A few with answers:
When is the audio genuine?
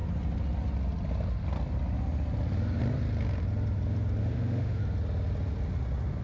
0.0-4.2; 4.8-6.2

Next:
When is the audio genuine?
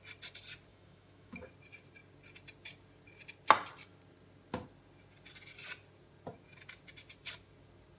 0.0-0.7; 1.5-8.0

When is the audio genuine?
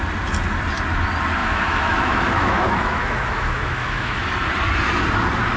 0.0-1.4; 4.3-5.6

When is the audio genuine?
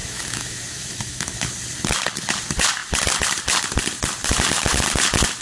1.5-5.4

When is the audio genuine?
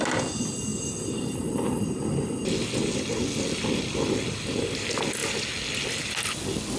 0.0-6.8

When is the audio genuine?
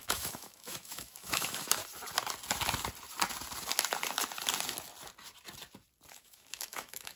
1.8-6.1